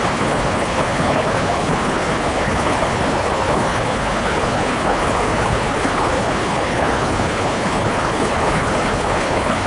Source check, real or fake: fake